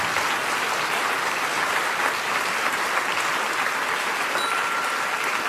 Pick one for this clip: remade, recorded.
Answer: recorded